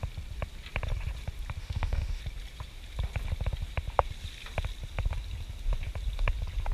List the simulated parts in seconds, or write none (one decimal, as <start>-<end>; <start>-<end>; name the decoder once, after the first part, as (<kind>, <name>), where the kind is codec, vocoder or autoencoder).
1.6-2.2 (autoencoder, DAC-VAE)

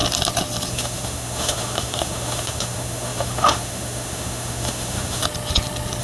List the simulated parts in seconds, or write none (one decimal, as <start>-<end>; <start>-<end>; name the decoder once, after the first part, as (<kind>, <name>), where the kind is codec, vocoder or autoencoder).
0.7-5.2 (autoencoder, DAC-VAE)

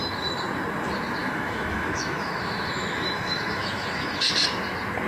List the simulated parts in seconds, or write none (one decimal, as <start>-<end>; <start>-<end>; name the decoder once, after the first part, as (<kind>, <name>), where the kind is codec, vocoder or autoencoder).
1.2-4.3 (autoencoder, DAC-VAE)

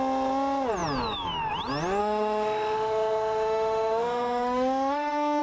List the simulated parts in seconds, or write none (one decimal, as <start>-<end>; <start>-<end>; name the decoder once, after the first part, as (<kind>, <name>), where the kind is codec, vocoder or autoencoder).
2.0-5.4 (autoencoder, DAC-VAE)